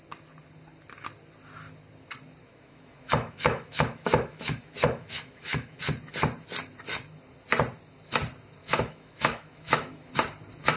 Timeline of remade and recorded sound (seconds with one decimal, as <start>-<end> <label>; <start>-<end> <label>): 0.0-2.4 recorded; 2.4-5.8 remade; 5.8-8.6 recorded; 8.6-10.1 remade; 10.1-10.8 recorded